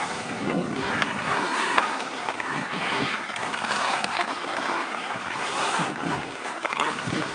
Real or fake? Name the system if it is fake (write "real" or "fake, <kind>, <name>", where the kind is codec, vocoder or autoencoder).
fake, codec, SNAC